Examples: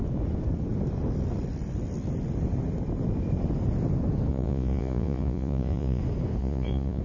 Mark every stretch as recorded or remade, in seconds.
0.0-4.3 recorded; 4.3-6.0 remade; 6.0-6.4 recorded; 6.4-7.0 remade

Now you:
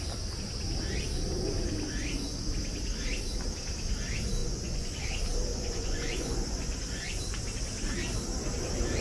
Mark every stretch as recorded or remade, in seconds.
0.0-2.0 recorded; 2.0-2.5 remade; 2.5-4.4 recorded; 4.4-5.0 remade; 5.0-5.5 recorded; 5.5-7.2 remade; 7.2-9.0 recorded

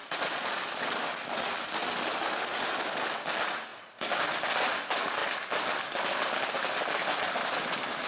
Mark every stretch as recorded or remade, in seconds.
0.0-8.1 recorded

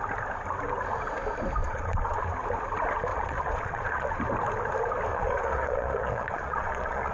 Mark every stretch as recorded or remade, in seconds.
0.0-1.6 recorded; 1.6-2.2 remade; 2.2-3.1 recorded; 3.1-4.2 remade; 4.2-5.1 recorded; 5.1-7.1 remade

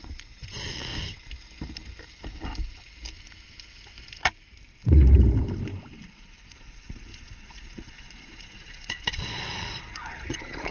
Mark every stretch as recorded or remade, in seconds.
0.0-0.9 remade; 0.9-6.1 recorded; 6.1-10.7 remade

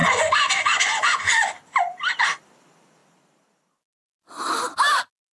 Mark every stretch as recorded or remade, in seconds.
0.0-1.5 remade; 1.5-5.3 recorded

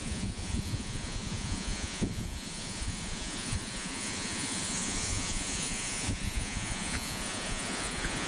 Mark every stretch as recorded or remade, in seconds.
0.0-8.3 remade

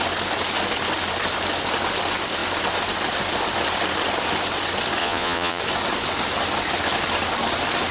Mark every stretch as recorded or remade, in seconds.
0.0-5.0 recorded; 5.0-5.6 remade; 5.6-7.9 recorded